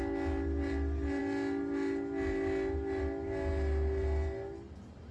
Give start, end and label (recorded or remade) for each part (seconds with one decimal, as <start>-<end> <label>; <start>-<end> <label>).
0.0-5.1 recorded